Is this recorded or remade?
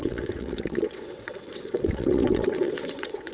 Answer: remade